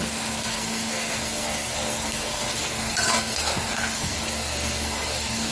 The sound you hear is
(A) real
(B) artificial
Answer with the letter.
B